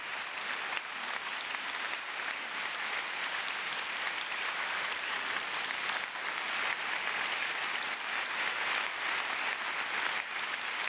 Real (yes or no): yes